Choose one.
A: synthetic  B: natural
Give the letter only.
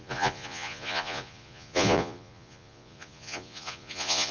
A